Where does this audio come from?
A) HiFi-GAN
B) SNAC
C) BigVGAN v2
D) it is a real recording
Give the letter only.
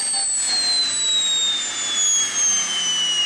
D